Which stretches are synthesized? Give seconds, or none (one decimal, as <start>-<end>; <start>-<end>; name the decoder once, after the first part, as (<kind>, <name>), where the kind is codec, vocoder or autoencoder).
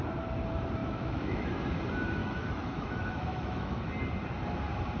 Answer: 0.8-1.5 (autoencoder, DAC-VAE); 2.2-3.9